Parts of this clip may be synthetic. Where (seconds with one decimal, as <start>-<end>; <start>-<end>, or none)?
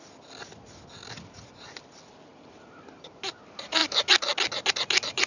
none